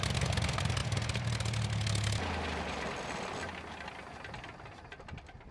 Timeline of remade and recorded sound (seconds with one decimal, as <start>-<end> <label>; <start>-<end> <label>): 0.0-5.5 recorded